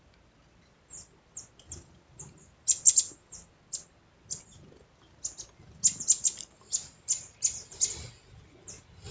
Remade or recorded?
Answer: recorded